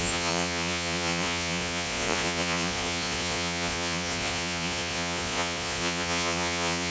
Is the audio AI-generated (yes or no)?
yes